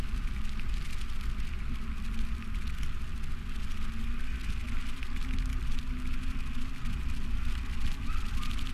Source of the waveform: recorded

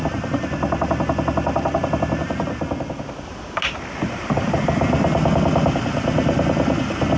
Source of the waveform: recorded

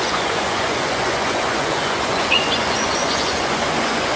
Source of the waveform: remade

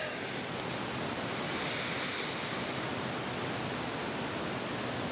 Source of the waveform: recorded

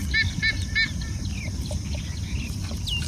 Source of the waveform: recorded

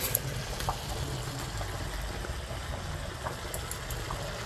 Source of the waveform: recorded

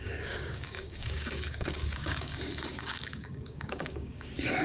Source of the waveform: remade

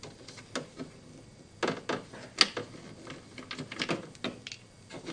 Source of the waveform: recorded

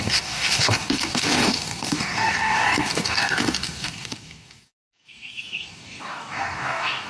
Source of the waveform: remade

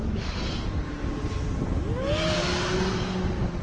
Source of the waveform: recorded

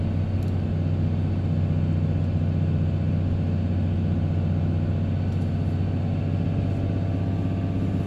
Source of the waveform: recorded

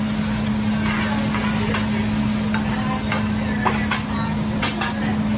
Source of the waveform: recorded